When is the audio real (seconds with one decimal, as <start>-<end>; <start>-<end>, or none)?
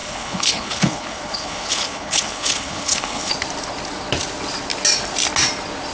3.3-5.9